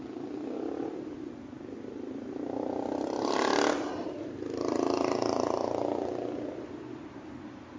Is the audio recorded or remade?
recorded